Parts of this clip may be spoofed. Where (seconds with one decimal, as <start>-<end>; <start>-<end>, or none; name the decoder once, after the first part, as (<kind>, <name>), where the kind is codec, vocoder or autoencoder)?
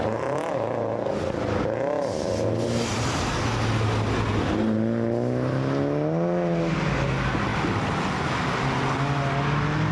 none